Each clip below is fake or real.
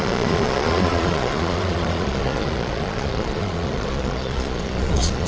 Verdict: fake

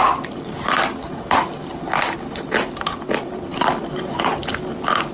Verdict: real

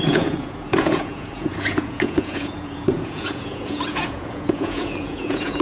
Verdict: fake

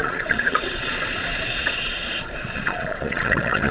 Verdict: fake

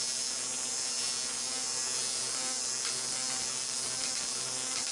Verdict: real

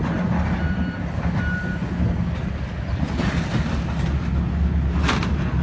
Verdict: real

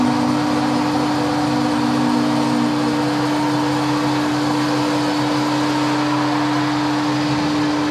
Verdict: real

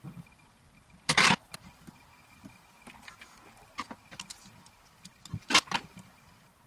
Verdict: real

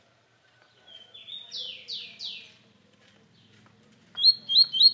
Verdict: real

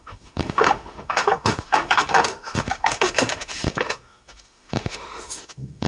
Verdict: fake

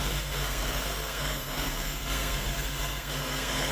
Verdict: fake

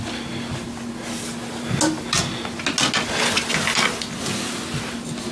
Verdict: real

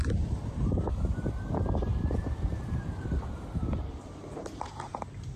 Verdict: fake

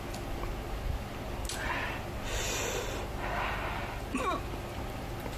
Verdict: real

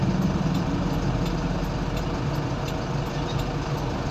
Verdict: real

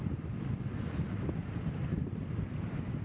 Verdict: fake